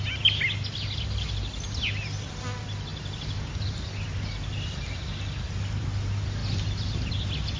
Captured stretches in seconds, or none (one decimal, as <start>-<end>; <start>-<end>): 0.0-7.6